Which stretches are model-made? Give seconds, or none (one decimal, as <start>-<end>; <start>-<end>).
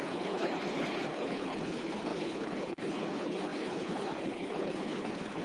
0.0-5.4